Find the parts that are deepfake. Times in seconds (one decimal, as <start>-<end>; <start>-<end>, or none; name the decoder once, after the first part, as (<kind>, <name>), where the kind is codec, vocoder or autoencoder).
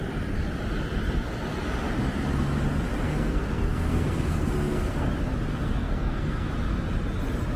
3.0-5.1 (codec, SNAC); 5.5-6.5